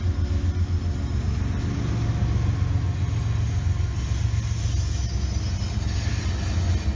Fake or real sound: real